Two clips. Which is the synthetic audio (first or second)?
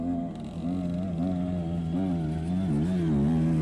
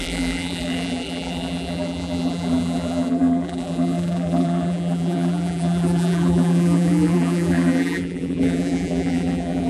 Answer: second